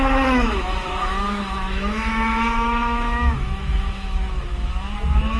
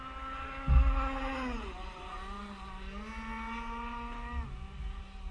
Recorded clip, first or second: second